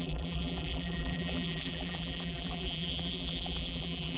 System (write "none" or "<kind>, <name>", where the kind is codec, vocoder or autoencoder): vocoder, BigVGAN v2